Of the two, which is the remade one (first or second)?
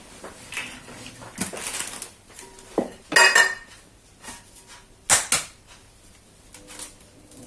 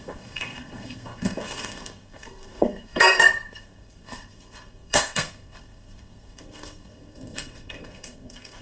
second